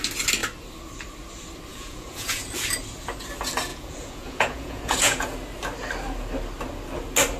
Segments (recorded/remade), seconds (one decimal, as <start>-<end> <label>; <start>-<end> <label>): 0.0-1.7 recorded; 1.7-2.5 remade; 2.5-3.7 recorded; 3.7-5.3 remade; 5.3-7.4 recorded